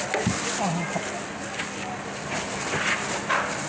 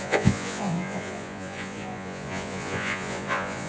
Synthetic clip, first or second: second